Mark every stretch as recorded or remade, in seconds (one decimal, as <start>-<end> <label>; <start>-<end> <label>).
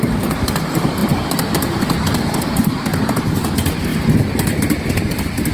0.0-1.0 recorded; 1.0-3.5 remade; 3.5-5.5 recorded